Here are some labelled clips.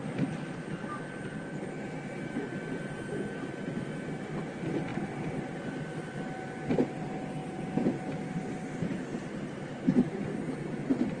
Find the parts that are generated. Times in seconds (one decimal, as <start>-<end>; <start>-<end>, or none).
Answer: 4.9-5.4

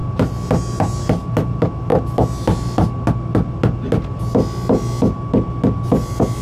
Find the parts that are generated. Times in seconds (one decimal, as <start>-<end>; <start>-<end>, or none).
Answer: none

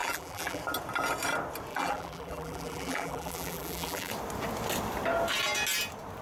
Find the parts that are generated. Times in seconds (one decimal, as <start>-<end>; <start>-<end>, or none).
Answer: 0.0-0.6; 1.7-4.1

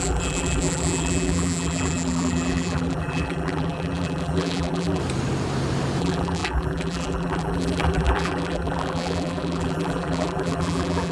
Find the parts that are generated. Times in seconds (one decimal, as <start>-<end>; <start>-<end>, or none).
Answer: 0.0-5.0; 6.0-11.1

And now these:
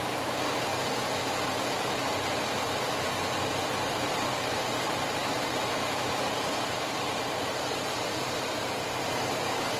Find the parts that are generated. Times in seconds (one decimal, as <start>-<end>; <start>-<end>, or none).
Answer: 0.0-0.7; 3.9-9.8

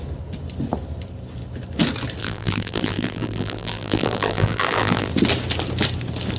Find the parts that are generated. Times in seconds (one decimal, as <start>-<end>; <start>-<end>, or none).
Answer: 2.2-5.1